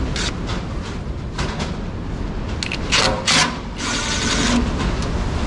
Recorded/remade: recorded